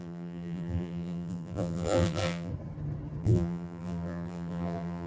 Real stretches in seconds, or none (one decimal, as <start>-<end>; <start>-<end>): 2.5-3.2